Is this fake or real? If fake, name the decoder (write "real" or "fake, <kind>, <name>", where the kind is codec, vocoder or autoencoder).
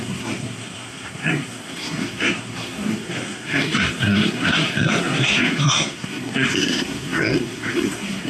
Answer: fake, codec, SNAC